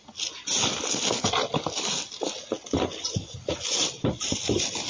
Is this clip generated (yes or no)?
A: no